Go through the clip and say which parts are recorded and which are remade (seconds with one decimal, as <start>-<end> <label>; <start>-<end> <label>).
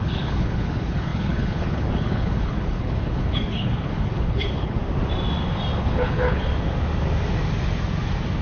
0.0-4.8 remade; 4.8-5.8 recorded; 5.8-6.5 remade; 6.5-8.4 recorded